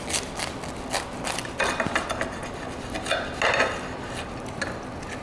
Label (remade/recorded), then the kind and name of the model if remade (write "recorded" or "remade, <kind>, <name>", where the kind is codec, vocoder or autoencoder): recorded